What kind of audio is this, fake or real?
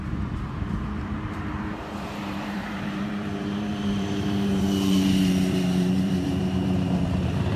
fake